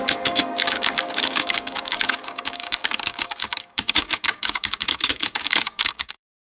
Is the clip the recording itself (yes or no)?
no